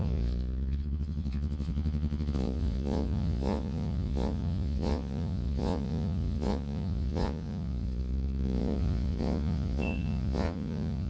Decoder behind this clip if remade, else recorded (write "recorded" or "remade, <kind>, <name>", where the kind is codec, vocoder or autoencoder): remade, vocoder, Vocos